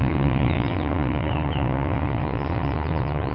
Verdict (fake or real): fake